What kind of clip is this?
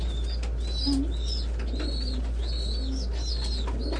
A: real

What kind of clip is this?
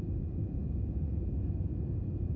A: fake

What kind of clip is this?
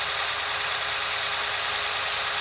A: real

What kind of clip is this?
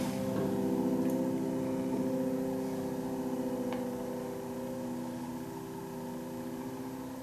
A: real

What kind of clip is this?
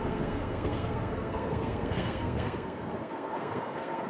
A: fake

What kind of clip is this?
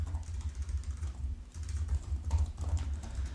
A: fake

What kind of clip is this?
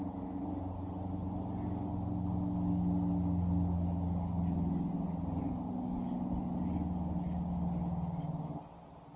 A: real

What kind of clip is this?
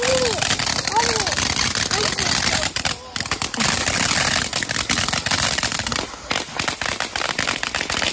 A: real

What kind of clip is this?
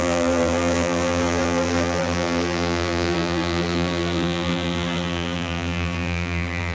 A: fake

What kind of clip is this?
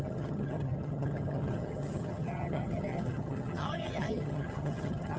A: fake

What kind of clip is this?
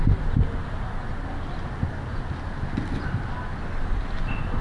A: real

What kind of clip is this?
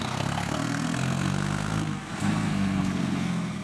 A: fake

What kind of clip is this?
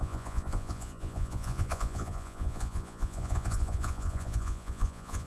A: fake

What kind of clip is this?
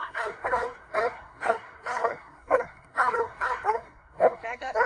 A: fake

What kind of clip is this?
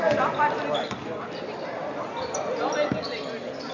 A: real